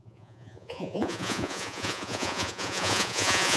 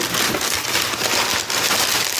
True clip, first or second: second